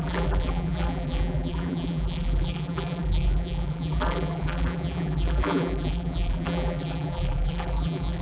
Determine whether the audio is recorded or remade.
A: remade